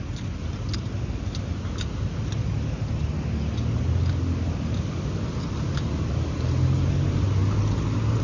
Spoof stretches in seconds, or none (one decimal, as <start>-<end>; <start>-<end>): none